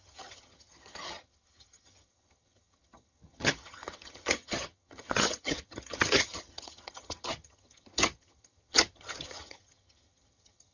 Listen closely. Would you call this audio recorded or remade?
remade